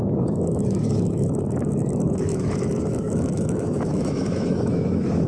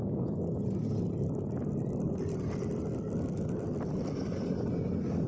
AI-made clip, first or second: first